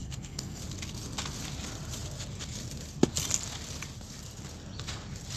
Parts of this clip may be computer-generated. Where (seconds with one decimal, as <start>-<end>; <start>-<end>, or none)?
0.0-0.6